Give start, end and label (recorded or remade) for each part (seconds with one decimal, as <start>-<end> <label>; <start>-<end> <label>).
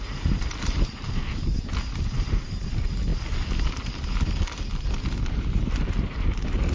0.0-1.2 remade; 1.2-1.9 recorded; 1.9-3.1 remade; 3.1-5.3 recorded; 5.3-6.7 remade